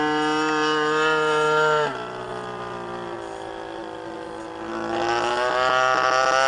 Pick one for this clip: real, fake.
real